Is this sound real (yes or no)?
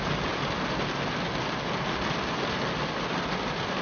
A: yes